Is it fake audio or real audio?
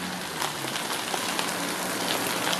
real